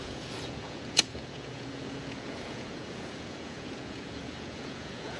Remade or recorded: remade